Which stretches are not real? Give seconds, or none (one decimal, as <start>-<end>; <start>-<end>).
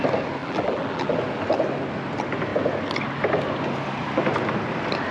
0.4-1.2